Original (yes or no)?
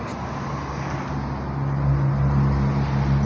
yes